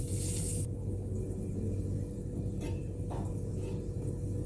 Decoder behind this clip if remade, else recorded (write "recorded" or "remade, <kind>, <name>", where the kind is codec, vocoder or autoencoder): recorded